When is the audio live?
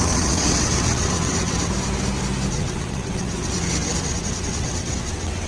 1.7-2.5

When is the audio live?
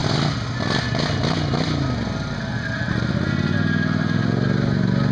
0.0-5.1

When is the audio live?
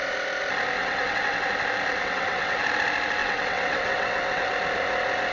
0.0-0.8; 1.5-2.0; 2.6-3.2; 4.5-5.3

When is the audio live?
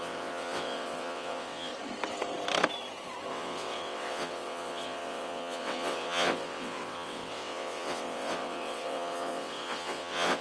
1.7-3.3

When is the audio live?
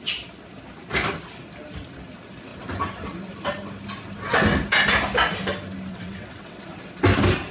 0.0-5.9; 6.6-7.5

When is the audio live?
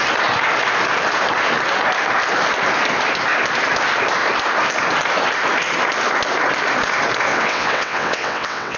0.0-7.3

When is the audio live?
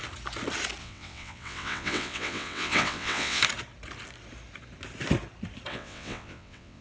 0.0-0.8; 3.4-5.7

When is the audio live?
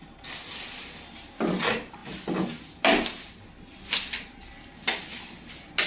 0.0-5.9